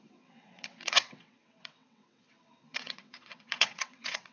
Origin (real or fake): fake